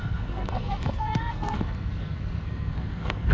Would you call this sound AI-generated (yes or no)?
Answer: yes